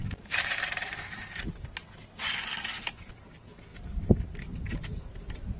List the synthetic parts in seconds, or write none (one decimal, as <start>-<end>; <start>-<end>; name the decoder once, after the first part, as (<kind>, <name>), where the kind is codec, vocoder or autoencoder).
0.0-1.8 (vocoder, BigVGAN v2); 3.1-3.7; 4.6-5.6